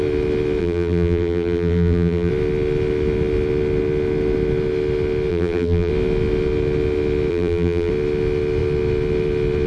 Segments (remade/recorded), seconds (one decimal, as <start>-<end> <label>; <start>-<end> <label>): 0.0-0.6 recorded; 0.6-2.3 remade; 2.3-5.3 recorded; 5.3-5.9 remade; 5.9-7.3 recorded; 7.3-7.9 remade; 7.9-9.7 recorded